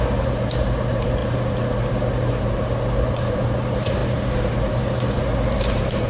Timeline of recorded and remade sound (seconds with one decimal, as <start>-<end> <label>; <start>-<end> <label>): 0.0-1.2 remade; 1.2-1.9 recorded; 1.9-6.1 remade